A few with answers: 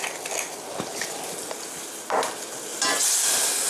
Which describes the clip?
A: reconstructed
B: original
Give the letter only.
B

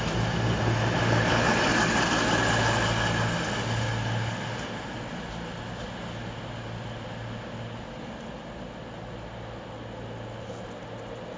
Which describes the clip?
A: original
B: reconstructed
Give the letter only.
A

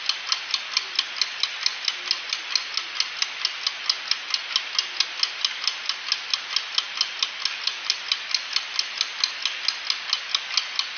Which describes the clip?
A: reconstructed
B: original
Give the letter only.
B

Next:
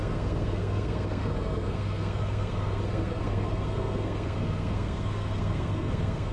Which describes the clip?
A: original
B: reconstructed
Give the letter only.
B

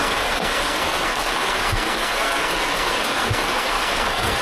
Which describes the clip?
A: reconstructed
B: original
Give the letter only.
A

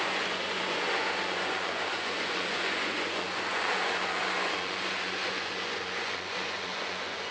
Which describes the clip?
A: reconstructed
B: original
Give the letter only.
A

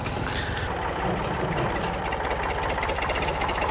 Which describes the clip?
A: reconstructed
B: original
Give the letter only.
B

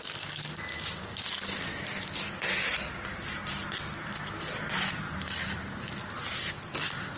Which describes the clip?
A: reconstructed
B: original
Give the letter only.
B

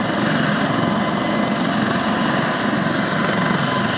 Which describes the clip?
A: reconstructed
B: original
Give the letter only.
B